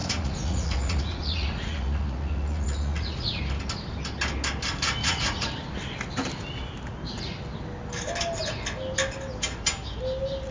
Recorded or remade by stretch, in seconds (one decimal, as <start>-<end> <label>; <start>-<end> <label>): 0.0-3.4 remade; 3.4-5.0 recorded; 5.0-5.5 remade; 5.5-10.5 recorded